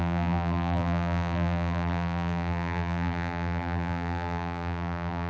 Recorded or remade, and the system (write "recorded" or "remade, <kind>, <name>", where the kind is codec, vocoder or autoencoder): remade, vocoder, BigVGAN v2